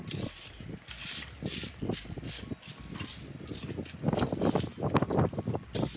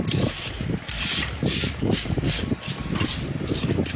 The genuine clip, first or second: first